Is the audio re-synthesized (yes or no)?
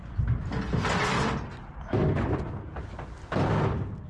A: no